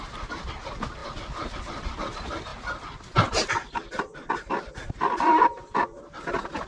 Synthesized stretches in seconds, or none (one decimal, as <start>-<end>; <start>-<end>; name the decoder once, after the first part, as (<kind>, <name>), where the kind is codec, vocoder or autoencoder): none